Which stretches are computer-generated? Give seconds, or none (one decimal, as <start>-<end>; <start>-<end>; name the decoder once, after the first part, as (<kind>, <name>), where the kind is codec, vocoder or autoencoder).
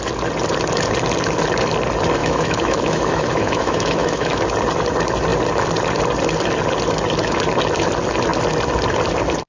2.2-4.4 (autoencoder, DAC-VAE)